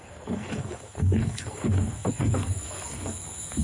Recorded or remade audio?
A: remade